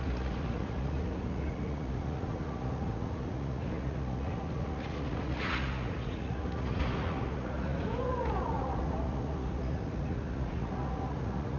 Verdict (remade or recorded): remade